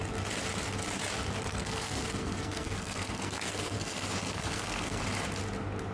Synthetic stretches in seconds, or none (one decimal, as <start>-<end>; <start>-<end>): 1.5-5.0